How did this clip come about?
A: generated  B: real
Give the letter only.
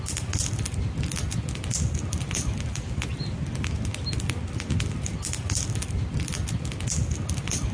B